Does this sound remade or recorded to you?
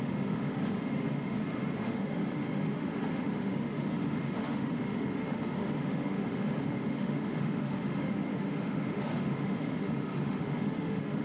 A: remade